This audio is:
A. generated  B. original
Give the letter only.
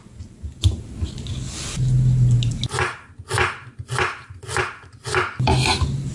B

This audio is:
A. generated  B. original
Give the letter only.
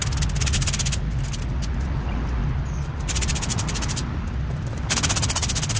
B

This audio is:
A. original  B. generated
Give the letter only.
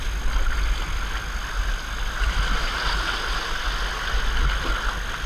A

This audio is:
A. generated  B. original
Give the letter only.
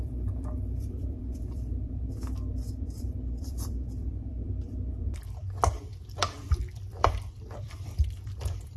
A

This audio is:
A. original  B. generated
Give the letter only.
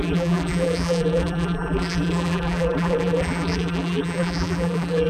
B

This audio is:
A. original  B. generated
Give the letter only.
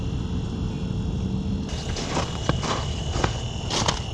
A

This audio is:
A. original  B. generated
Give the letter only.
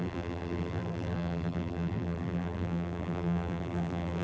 B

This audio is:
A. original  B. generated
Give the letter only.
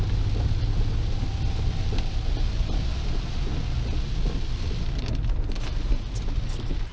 A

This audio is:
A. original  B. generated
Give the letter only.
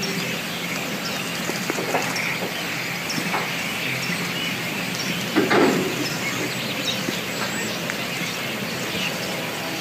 A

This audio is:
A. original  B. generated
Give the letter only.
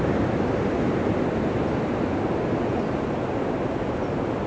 A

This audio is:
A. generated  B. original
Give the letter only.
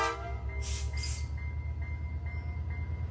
B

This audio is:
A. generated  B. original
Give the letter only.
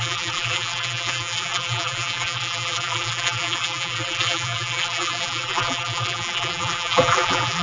A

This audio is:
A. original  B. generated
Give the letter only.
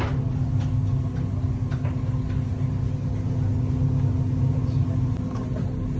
A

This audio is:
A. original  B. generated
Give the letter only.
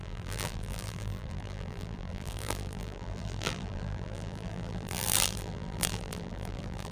B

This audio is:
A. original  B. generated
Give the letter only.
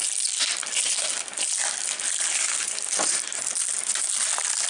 A